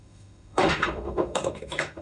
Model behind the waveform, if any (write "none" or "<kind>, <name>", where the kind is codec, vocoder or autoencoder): autoencoder, DAC-VAE